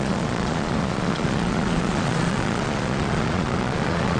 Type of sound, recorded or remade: remade